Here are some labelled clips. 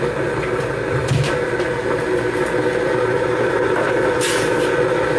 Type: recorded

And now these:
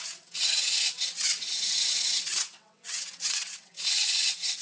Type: remade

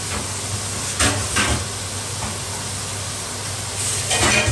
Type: recorded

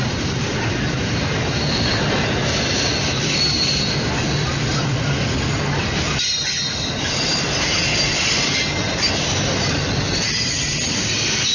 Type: recorded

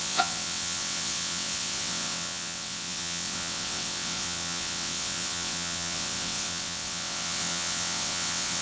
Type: remade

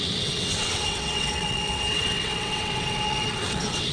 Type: remade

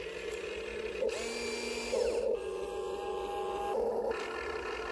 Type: recorded